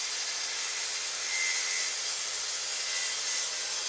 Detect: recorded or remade recorded